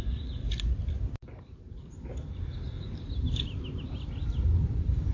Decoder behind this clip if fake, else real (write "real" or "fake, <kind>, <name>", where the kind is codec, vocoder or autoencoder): real